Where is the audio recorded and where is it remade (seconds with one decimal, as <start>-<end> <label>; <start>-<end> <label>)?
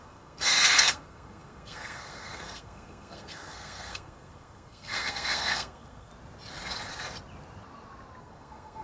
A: 0.0-6.1 remade; 6.1-8.2 recorded; 8.2-8.8 remade